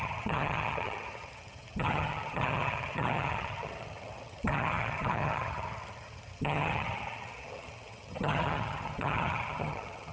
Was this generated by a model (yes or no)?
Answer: yes